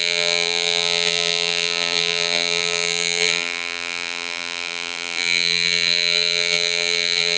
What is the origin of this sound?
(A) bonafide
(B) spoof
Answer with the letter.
B